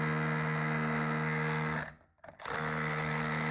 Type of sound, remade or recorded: recorded